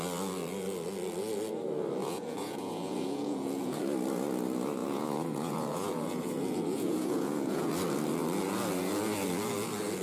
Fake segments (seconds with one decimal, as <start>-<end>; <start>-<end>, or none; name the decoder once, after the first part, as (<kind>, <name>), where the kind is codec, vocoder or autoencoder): 2.0-3.8 (vocoder, Vocos); 4.8-7.7